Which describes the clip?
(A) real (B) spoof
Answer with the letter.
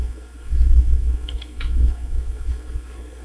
B